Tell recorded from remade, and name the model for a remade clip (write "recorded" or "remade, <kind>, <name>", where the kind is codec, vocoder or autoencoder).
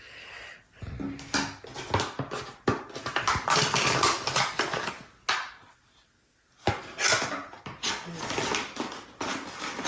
recorded